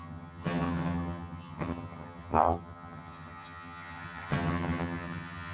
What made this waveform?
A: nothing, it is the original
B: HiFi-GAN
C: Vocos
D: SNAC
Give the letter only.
B